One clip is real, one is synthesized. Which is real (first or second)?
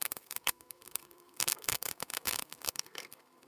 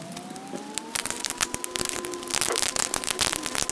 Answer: second